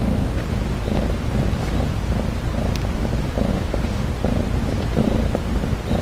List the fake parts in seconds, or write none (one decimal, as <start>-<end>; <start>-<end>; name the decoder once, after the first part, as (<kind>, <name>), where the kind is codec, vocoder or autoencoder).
0.0-0.4 (autoencoder, DAC-VAE); 3.5-4.1